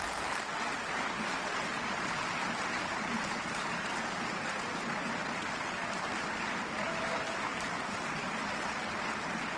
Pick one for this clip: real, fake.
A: real